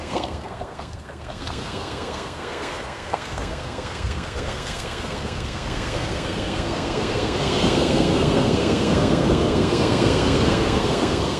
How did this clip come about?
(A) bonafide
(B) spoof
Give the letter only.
B